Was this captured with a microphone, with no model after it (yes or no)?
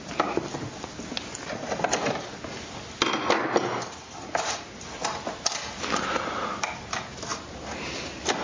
yes